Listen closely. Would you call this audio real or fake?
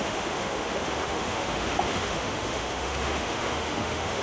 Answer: fake